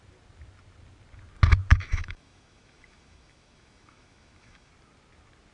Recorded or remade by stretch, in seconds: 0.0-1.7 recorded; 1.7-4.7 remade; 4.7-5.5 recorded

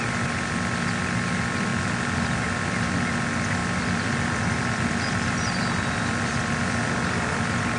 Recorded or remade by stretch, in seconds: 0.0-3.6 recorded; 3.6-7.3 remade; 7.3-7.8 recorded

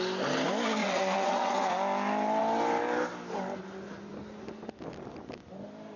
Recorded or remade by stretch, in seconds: 0.0-0.8 recorded; 0.8-1.7 remade; 1.7-6.0 recorded

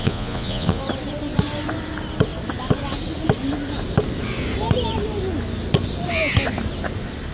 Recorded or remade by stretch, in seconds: 0.0-0.8 remade; 0.8-7.3 recorded

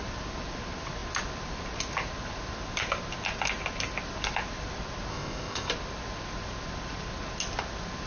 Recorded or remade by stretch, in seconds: 0.0-5.1 recorded; 5.1-5.7 remade; 5.7-8.1 recorded